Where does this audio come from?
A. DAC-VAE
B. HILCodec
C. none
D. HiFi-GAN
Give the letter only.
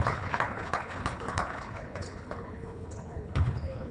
B